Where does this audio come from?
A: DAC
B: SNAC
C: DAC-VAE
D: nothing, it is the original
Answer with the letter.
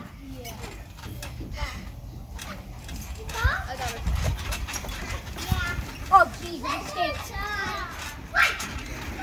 D